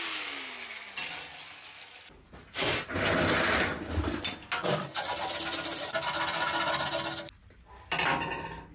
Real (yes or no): yes